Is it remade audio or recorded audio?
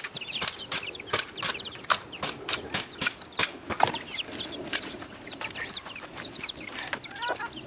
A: recorded